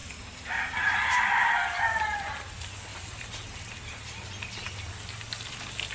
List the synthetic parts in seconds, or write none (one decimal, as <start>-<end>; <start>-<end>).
0.0-2.4; 2.9-4.9